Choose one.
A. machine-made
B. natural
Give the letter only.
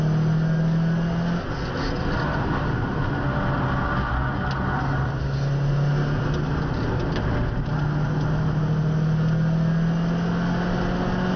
B